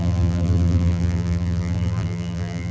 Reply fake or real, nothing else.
fake